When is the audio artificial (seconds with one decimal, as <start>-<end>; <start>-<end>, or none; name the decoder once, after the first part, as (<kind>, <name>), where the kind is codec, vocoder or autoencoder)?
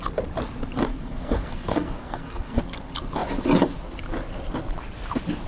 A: 0.9-2.6 (codec, SNAC)